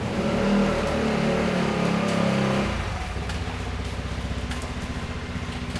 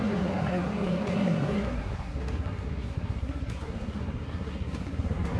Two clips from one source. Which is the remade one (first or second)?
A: second